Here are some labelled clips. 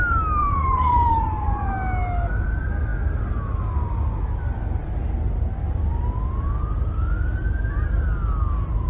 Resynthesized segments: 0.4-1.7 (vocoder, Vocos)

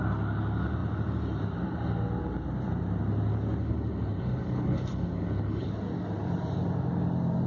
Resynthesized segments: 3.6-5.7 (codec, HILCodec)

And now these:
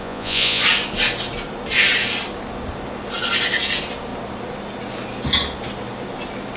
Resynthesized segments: 0.0-0.6 (vocoder, Vocos)

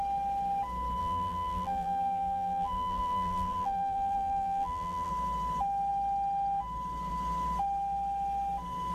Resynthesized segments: 1.0-5.1 (vocoder, BigVGAN v2)

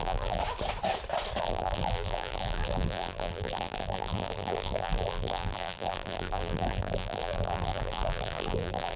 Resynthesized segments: 0.0-0.4 (vocoder, BigVGAN v2); 1.4-9.0

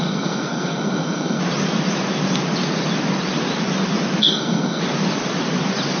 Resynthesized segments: 0.0-1.4 (codec, SNAC); 4.2-4.8